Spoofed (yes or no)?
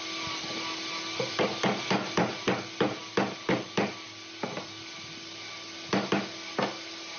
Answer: no